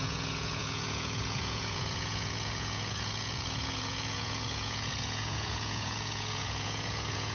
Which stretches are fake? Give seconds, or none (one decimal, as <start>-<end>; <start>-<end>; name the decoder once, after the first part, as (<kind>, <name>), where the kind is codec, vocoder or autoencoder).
0.0-7.3 (vocoder, Vocos)